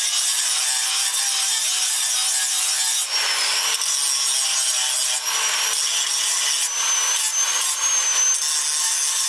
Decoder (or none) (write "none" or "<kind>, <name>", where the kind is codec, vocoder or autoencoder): none